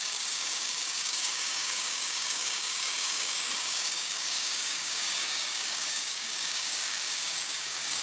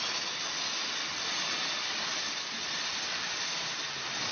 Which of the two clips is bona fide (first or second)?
second